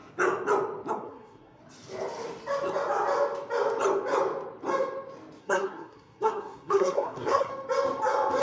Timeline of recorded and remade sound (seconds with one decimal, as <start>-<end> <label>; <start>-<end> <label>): 0.0-0.9 recorded; 0.9-1.6 remade; 1.6-5.4 recorded; 5.4-7.5 remade; 7.5-8.4 recorded